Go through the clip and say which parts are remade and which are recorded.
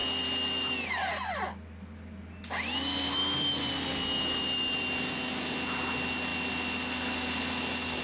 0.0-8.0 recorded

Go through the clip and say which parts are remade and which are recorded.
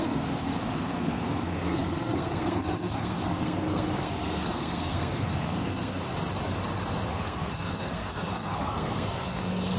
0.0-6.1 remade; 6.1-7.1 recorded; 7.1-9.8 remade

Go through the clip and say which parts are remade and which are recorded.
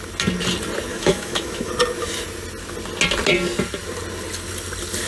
0.0-0.9 recorded; 0.9-1.7 remade; 1.7-5.1 recorded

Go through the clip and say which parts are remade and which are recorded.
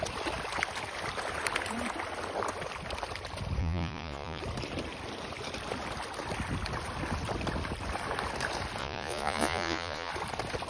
0.0-3.6 recorded; 3.6-4.4 remade; 4.4-8.8 recorded; 8.8-10.1 remade; 10.1-10.7 recorded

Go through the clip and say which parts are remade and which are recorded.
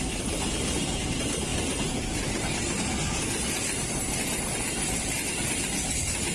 0.0-6.3 recorded